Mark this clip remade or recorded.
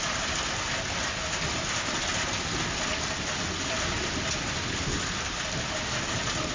recorded